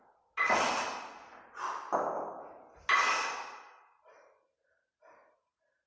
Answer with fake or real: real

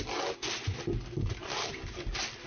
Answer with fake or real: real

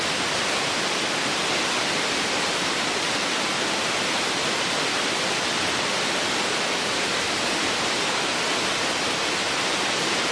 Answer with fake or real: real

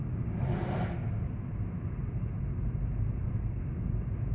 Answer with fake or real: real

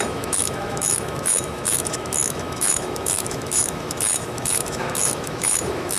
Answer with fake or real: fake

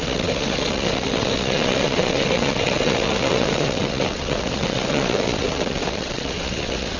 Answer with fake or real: fake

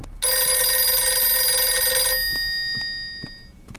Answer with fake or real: real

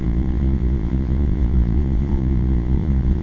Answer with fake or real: fake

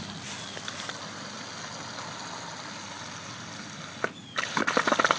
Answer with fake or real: real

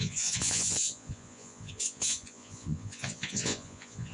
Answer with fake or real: fake